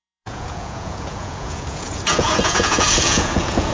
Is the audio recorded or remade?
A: remade